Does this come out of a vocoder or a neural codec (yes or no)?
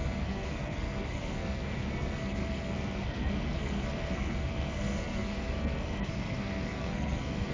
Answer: yes